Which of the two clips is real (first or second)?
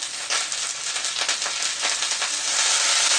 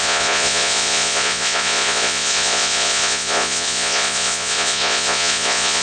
first